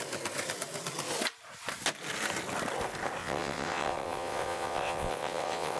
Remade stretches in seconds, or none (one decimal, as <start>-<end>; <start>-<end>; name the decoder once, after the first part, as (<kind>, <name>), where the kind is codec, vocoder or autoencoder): 3.2-5.8 (vocoder, WaveNeXt)